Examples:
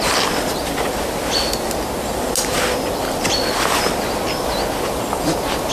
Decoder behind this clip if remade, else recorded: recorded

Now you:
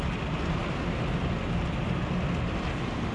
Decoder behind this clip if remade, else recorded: recorded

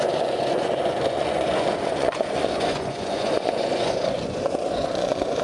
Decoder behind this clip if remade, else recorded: remade, vocoder, Vocos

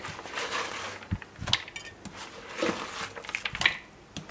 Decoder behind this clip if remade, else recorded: recorded